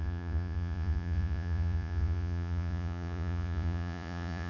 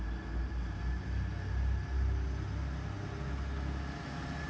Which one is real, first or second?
second